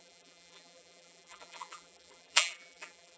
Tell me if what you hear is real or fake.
fake